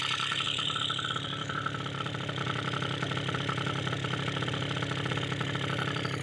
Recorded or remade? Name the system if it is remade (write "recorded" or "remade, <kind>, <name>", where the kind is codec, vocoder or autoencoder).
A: remade, vocoder, BigVGAN v2